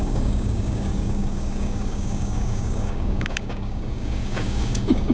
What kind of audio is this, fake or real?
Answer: fake